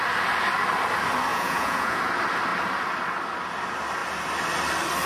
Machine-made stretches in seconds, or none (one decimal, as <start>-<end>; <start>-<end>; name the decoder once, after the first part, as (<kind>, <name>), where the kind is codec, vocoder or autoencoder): 1.3-2.0 (vocoder, Vocos)